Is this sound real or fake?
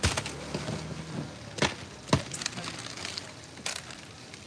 real